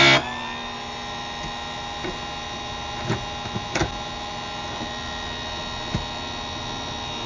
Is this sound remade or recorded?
recorded